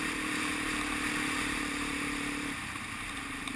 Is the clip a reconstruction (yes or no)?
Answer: yes